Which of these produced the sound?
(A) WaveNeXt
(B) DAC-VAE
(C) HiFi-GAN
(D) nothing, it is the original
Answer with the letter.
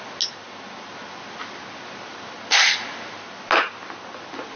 D